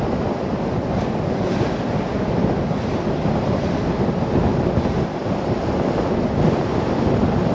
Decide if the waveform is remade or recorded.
recorded